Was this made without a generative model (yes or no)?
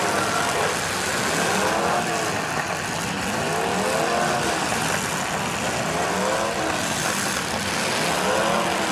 yes